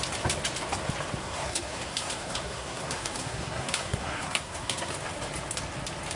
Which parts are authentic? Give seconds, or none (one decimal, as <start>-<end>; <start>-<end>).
0.0-1.2; 4.9-6.2